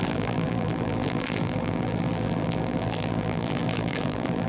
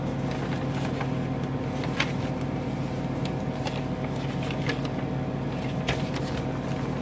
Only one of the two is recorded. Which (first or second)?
second